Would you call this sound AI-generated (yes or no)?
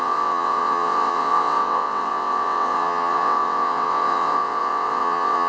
yes